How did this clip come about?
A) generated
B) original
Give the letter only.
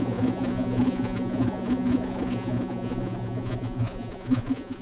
A